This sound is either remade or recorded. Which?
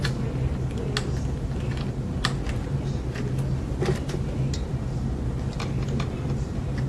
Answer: recorded